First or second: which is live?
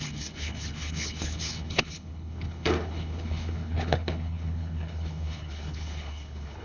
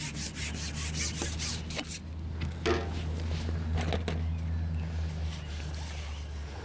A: second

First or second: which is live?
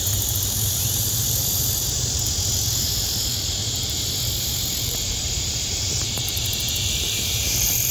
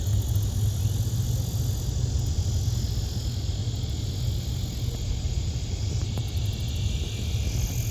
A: second